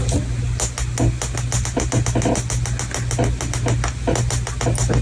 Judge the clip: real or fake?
real